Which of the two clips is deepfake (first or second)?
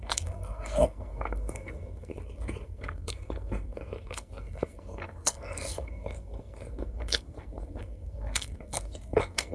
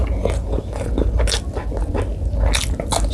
first